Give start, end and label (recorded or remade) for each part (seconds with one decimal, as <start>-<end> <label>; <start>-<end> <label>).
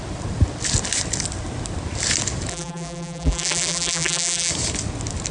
0.0-2.5 recorded; 2.5-4.5 remade; 4.5-5.3 recorded